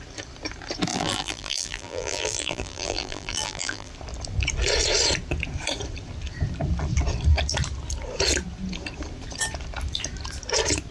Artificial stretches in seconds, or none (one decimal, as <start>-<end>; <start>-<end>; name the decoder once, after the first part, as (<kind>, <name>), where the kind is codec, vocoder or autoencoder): 0.9-3.9 (vocoder, BigVGAN v2)